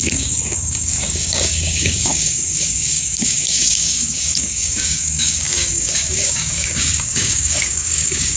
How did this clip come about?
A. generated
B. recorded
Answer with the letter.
A